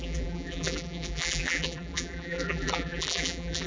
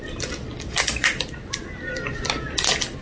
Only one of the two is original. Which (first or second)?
second